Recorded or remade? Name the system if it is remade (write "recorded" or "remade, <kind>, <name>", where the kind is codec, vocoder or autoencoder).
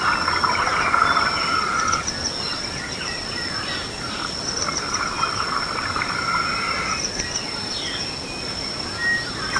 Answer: recorded